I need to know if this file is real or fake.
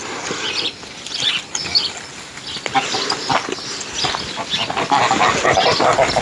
real